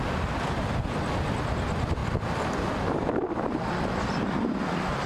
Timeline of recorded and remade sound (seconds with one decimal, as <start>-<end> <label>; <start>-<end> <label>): 0.0-5.1 recorded

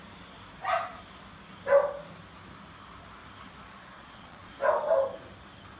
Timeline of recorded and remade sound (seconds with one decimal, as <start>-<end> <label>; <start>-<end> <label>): 0.0-4.0 recorded; 4.0-4.5 remade; 4.5-5.8 recorded

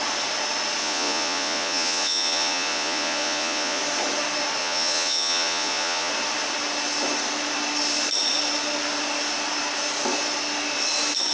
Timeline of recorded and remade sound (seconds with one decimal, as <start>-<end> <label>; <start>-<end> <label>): 0.0-0.8 recorded; 0.8-3.8 remade; 3.8-4.6 recorded; 4.6-6.1 remade; 6.1-11.3 recorded

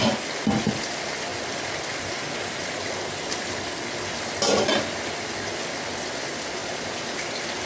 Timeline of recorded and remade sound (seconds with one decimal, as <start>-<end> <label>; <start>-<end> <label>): 0.0-6.6 recorded; 6.6-7.7 remade